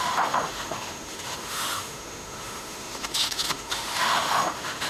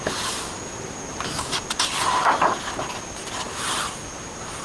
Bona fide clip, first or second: second